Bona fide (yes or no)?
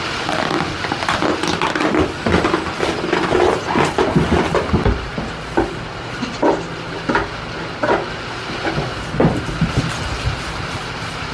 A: yes